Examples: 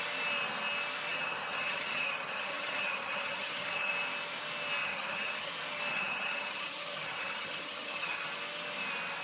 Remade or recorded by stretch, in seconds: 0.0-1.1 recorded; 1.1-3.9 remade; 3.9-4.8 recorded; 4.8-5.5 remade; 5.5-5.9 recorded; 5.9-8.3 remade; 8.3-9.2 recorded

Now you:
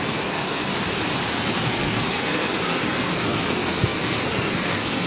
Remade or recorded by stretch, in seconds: 0.0-0.7 remade; 0.7-1.3 recorded; 1.3-5.1 remade

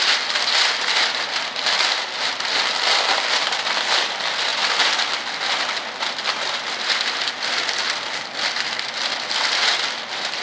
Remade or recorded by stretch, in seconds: 0.0-10.4 recorded

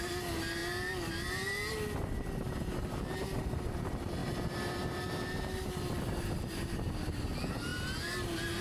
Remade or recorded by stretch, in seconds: 0.0-4.2 recorded; 4.2-6.9 remade; 6.9-8.6 recorded